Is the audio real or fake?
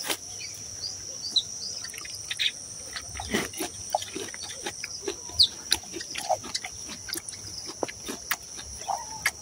real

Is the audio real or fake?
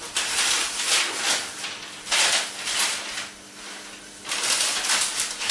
real